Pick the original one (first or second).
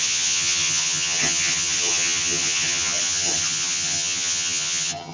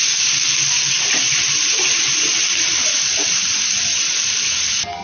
second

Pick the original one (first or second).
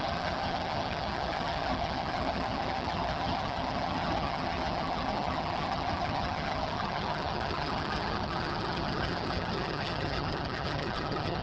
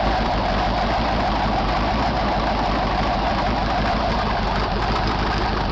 second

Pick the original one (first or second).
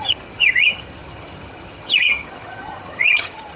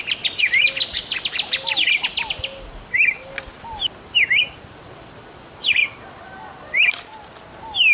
second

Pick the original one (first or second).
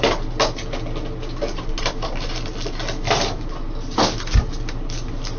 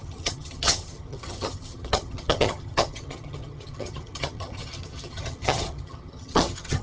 first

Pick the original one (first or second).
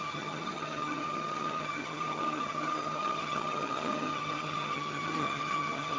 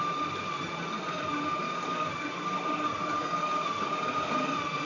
second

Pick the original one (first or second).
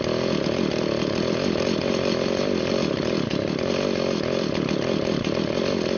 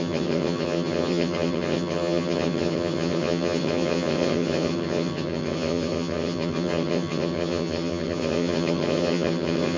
first